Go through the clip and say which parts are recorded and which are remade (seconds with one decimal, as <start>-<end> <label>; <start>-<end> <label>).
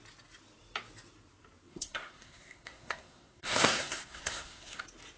0.0-1.7 recorded; 1.7-4.8 remade; 4.8-5.2 recorded